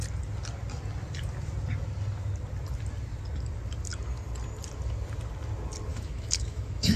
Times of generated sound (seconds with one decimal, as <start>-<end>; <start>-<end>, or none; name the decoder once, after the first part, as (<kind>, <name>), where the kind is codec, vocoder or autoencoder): 5.9-7.0 (autoencoder, DAC-VAE)